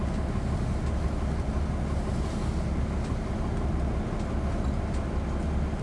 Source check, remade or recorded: recorded